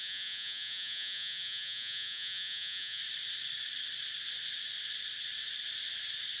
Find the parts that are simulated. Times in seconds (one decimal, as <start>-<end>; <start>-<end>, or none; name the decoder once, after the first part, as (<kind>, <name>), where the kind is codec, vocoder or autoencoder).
0.0-3.0 (vocoder, Vocos)